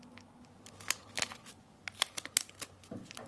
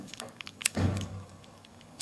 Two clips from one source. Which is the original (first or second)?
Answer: first